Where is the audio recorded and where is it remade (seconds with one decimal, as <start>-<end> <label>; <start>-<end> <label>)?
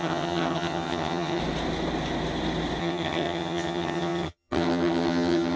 0.0-1.4 remade; 1.4-2.8 recorded; 2.8-5.6 remade